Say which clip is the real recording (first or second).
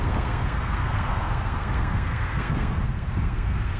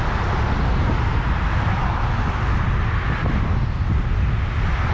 second